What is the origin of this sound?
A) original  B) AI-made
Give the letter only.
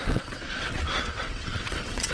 B